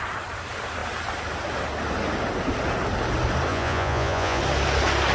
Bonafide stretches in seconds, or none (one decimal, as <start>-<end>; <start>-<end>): 0.0-3.5; 4.4-5.1